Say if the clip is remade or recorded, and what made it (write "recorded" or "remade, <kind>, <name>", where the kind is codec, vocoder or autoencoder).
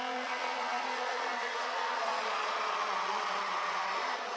remade, vocoder, Vocos